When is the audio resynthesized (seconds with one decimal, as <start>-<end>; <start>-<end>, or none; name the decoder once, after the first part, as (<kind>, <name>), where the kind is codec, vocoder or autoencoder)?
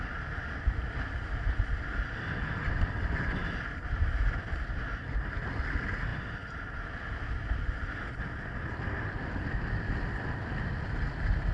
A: none